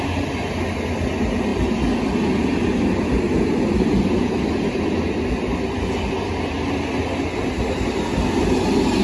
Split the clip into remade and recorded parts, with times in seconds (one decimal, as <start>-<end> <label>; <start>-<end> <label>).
0.0-9.0 recorded